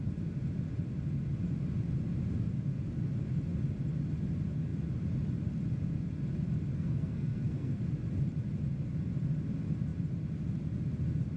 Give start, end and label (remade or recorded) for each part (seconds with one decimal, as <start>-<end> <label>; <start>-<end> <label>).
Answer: 0.0-6.7 recorded; 6.7-7.8 remade; 7.8-11.4 recorded